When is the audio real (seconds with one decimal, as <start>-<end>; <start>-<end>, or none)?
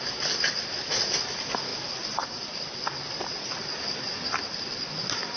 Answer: 0.0-1.7; 4.9-5.4